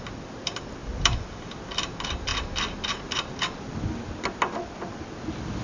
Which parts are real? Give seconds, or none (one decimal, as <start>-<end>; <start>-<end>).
0.0-0.8; 1.9-5.6